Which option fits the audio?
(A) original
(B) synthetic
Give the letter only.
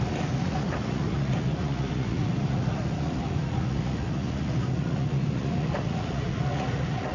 B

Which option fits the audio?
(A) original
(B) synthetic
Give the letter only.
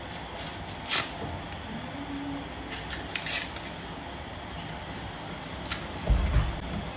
A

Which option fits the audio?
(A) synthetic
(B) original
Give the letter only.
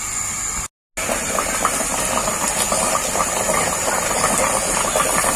B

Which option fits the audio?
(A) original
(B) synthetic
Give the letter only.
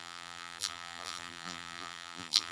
B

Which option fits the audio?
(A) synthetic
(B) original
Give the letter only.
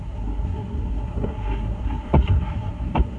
A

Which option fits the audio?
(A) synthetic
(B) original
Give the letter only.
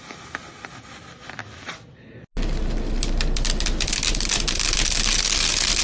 B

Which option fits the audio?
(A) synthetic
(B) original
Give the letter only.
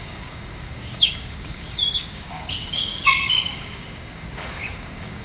A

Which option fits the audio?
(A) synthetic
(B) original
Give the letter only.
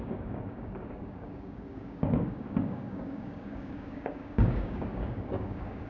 A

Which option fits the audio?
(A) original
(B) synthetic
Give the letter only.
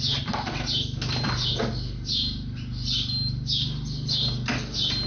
A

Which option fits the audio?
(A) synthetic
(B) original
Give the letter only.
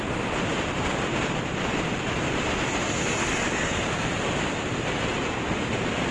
A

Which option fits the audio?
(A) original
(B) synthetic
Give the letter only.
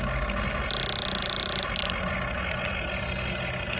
A